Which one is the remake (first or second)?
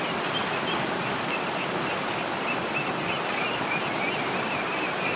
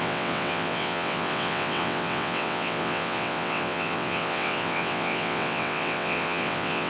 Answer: second